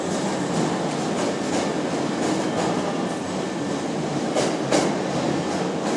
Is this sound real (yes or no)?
yes